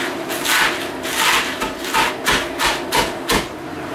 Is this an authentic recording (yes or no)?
yes